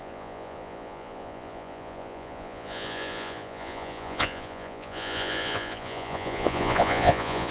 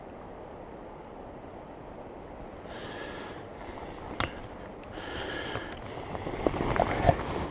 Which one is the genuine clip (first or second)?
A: second